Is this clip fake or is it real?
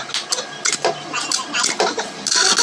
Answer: real